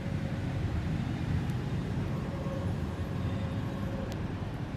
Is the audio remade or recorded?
remade